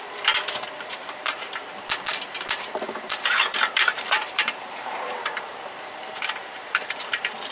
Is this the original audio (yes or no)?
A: no